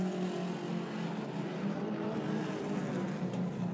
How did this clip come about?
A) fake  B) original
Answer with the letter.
B